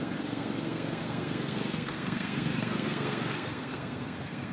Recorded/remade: remade